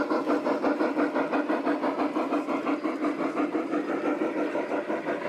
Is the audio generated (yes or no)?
no